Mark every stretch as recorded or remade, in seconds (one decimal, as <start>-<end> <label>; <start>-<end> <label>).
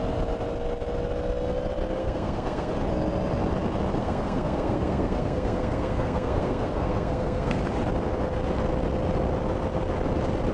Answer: 0.0-2.0 recorded; 2.0-2.7 remade; 2.7-4.0 recorded; 4.0-7.6 remade; 7.6-10.5 recorded